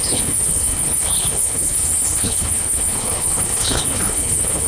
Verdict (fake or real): fake